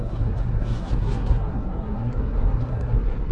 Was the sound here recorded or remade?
remade